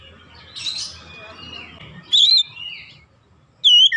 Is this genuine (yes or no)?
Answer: yes